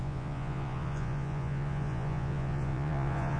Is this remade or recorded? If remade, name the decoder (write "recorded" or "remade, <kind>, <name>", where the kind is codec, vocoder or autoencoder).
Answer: remade, vocoder, Vocos